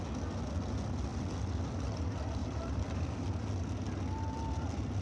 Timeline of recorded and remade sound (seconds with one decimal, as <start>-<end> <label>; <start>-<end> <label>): 0.0-1.1 recorded; 1.1-2.0 remade; 2.0-2.4 recorded; 2.4-3.4 remade; 3.4-5.0 recorded